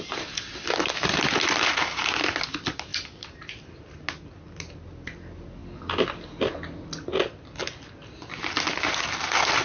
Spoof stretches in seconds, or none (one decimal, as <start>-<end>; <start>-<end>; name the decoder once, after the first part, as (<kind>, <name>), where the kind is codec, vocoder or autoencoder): none